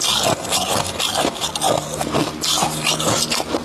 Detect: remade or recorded recorded